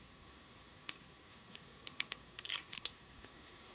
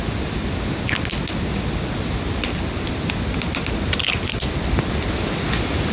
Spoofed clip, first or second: first